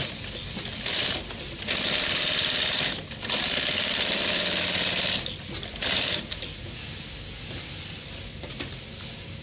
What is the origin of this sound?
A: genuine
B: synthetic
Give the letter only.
A